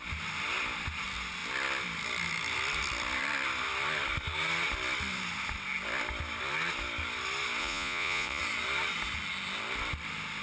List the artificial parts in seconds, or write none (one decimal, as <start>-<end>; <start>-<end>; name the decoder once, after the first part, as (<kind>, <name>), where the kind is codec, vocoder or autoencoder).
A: 7.6-8.4 (vocoder, Vocos)